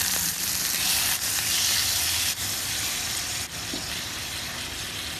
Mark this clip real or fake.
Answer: real